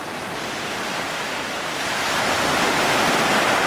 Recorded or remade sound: remade